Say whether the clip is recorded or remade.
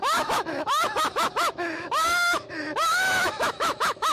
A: remade